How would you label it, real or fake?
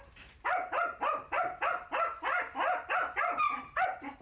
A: real